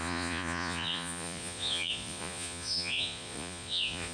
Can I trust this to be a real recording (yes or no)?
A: no